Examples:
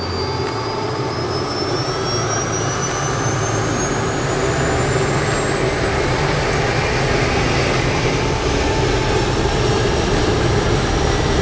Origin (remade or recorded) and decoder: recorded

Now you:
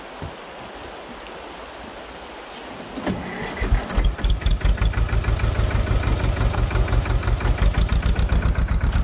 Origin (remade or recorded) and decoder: recorded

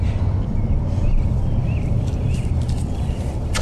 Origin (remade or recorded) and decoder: remade, vocoder, BigVGAN v2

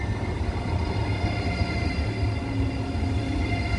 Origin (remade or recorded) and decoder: recorded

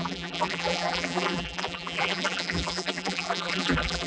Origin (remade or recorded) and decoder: remade, vocoder, BigVGAN v2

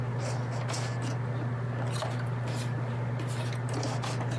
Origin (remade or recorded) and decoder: recorded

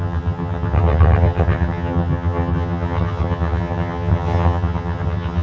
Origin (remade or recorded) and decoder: remade, vocoder, HiFi-GAN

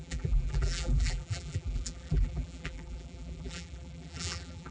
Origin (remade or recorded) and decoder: remade, vocoder, BigVGAN v2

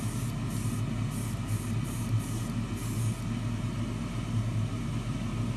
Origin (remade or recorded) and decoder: recorded